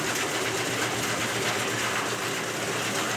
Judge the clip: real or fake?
real